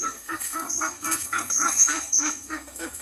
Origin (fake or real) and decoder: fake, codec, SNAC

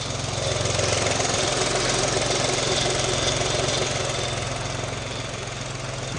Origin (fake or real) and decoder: real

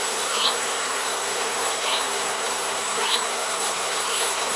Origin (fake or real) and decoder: fake, codec, SNAC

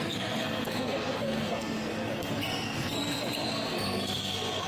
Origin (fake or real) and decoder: fake, codec, SNAC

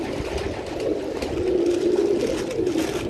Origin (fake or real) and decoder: real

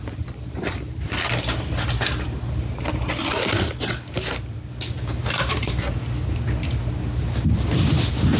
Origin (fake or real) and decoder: real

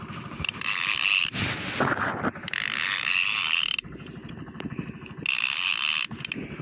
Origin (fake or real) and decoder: real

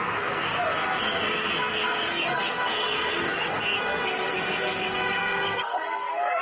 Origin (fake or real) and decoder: fake, codec, SNAC